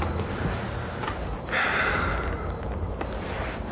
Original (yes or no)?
yes